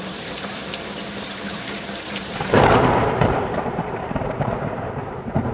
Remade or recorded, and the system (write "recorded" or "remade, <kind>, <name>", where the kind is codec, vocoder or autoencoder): remade, vocoder, BigVGAN v2